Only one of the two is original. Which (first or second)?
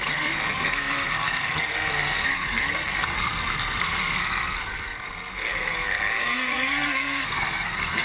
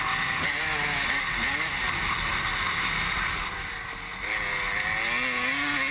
second